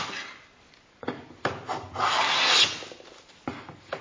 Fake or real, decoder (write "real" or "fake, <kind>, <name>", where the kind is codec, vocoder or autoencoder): real